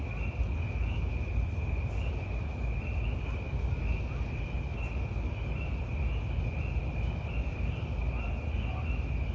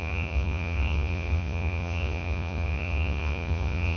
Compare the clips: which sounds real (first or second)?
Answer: first